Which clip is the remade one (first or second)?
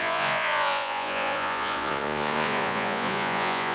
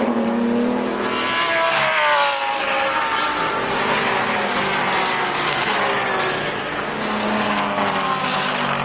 first